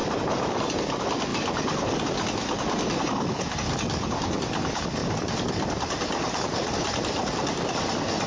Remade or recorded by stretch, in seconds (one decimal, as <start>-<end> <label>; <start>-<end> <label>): 0.0-8.3 recorded